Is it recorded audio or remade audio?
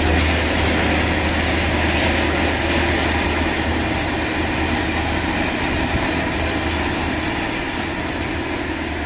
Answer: recorded